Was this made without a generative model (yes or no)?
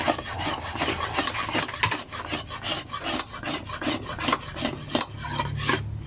yes